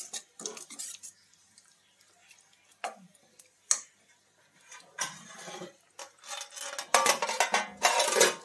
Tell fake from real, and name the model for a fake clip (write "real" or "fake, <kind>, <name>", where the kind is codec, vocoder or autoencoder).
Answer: real